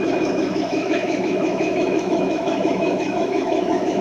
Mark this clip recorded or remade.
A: remade